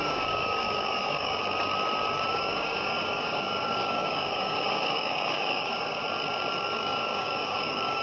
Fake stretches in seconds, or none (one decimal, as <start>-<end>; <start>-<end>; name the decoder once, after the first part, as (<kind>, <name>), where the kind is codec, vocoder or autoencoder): 0.0-1.4 (codec, DAC); 2.3-6.0; 6.6-8.0